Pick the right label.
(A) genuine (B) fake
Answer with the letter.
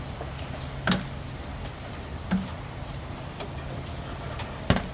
A